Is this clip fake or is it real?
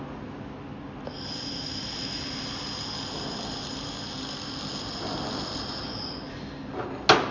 real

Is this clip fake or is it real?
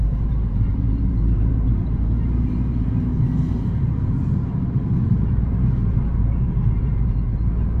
fake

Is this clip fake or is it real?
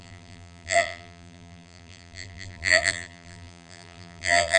fake